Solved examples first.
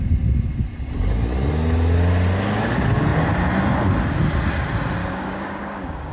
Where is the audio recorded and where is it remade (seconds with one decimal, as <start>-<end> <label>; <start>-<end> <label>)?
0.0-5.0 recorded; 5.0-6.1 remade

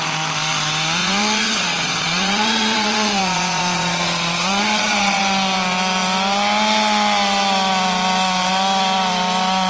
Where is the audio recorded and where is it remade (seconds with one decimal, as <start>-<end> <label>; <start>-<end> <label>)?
0.0-1.0 recorded; 1.0-5.2 remade; 5.2-9.7 recorded

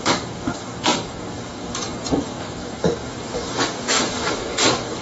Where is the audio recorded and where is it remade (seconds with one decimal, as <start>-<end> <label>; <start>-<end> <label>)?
0.0-5.0 remade

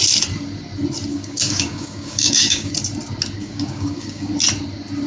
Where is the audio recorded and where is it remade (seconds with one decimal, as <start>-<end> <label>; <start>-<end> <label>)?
0.0-1.1 recorded; 1.1-2.7 remade; 2.7-3.4 recorded; 3.4-4.3 remade; 4.3-5.1 recorded